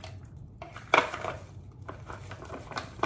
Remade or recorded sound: remade